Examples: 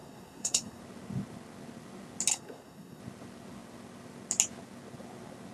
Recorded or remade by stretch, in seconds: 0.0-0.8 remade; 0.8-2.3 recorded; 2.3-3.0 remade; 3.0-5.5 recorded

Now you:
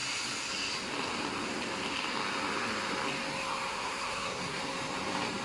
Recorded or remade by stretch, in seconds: 0.0-3.7 recorded; 3.7-4.6 remade; 4.6-5.4 recorded